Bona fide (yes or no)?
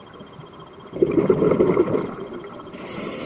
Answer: no